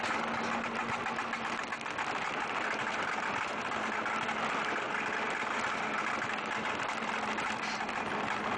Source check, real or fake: real